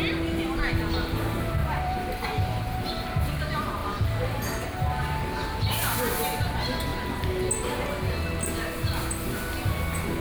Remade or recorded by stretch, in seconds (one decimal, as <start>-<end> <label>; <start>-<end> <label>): 0.0-1.6 recorded; 1.6-2.9 remade; 2.9-10.2 recorded